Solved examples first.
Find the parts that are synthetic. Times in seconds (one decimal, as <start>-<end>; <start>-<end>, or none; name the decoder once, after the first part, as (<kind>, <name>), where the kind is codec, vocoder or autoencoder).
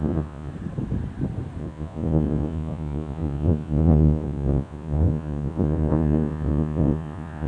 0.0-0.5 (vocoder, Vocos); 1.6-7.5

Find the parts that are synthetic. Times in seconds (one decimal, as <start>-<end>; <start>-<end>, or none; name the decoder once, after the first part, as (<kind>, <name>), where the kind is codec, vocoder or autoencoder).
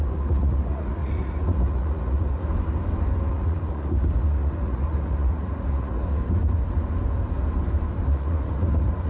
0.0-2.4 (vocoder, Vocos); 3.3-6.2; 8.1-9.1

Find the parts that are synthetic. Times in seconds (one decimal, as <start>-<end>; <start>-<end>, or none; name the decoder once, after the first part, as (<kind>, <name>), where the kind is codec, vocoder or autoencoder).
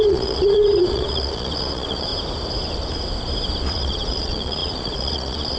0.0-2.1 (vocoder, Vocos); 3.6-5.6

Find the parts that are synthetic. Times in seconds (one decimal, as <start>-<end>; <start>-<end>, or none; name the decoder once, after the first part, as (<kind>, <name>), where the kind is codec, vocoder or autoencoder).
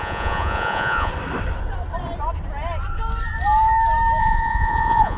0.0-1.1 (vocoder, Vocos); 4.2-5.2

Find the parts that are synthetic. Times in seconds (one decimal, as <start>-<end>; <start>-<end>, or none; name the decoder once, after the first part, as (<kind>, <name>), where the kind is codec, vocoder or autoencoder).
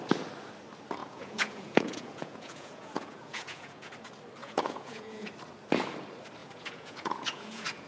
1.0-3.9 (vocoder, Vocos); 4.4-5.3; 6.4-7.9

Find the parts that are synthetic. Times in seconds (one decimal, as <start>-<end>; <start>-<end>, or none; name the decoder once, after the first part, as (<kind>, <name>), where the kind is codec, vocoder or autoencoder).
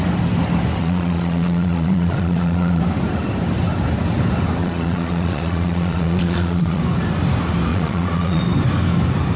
0.8-2.8 (vocoder, Vocos); 4.6-6.8; 7.7-8.4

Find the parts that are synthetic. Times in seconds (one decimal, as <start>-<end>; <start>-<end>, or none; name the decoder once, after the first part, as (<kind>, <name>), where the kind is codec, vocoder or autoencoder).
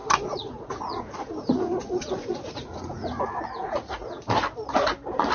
0.0-3.2 (vocoder, Vocos); 3.6-4.2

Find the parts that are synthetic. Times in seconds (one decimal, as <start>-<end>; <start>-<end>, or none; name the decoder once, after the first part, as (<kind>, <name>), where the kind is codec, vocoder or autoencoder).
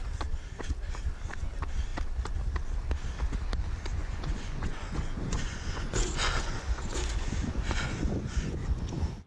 4.0-9.3 (vocoder, Vocos)